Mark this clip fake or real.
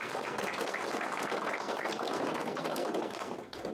fake